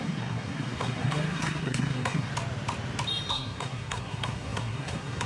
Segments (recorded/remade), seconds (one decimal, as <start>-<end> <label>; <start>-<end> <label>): 0.0-2.3 remade; 2.3-3.3 recorded; 3.3-5.3 remade